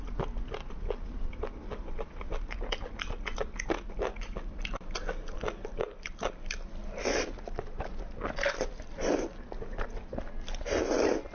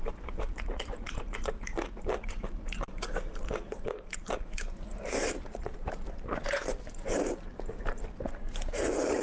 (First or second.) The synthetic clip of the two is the second